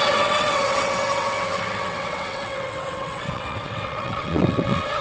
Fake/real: fake